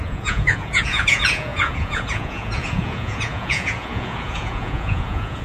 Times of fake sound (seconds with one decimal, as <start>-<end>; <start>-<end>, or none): 0.0-5.4